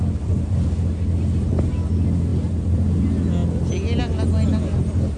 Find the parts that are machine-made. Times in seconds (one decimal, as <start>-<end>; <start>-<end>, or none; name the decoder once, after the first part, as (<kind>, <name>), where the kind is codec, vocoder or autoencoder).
2.3-3.0 (vocoder, BigVGAN v2)